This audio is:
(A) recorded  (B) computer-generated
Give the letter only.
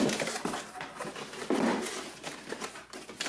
A